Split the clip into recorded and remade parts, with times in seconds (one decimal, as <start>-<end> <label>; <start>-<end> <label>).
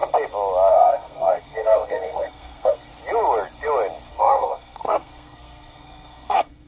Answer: 0.0-0.7 recorded; 0.7-2.9 remade; 2.9-4.1 recorded; 4.1-6.7 remade